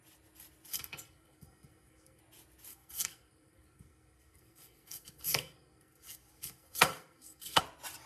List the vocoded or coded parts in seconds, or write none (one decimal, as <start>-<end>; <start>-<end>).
0.7-2.2; 2.7-7.6